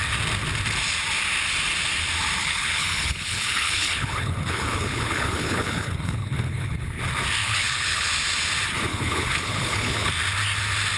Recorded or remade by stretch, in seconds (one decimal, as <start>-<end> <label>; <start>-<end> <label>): 0.0-2.4 recorded; 2.4-7.0 remade; 7.0-7.4 recorded; 7.4-8.1 remade; 8.1-8.9 recorded; 8.9-10.1 remade; 10.1-11.0 recorded